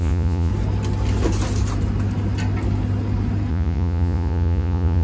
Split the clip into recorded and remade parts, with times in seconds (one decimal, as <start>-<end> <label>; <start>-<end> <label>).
0.0-0.5 remade; 0.5-3.5 recorded; 3.5-5.0 remade